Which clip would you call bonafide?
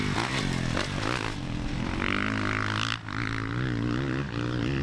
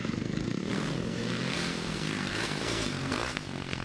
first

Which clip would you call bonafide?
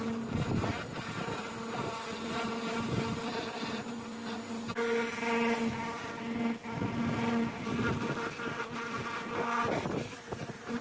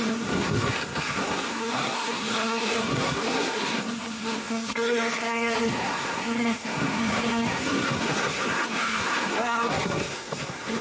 first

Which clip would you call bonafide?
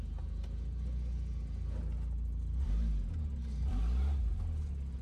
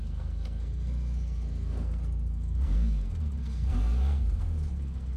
first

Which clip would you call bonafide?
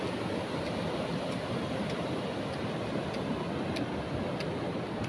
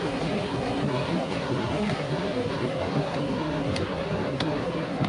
first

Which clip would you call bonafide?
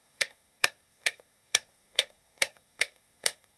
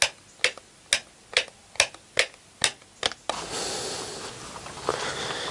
second